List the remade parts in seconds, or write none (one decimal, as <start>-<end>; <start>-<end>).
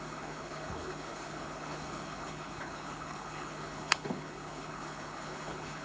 0.0-5.8